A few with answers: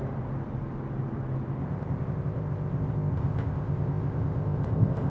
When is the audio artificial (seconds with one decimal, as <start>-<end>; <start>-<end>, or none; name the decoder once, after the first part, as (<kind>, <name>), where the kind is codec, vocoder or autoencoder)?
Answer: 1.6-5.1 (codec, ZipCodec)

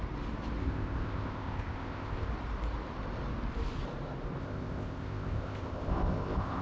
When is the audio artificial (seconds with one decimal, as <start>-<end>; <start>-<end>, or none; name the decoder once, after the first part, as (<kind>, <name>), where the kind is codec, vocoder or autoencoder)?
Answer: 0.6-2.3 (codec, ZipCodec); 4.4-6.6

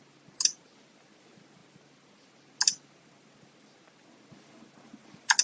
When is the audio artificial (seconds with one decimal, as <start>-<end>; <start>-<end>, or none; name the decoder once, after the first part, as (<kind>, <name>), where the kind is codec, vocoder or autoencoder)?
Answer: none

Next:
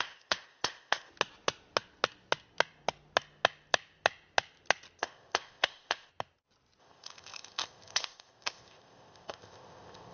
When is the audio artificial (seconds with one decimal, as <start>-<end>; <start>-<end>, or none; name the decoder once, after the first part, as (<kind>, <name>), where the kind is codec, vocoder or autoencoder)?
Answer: 0.0-1.1 (codec, ZipCodec); 5.0-6.1; 6.8-10.1